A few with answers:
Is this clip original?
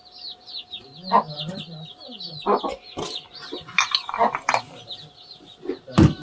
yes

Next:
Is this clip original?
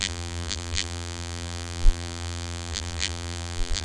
no